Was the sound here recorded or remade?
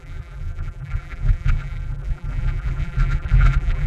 remade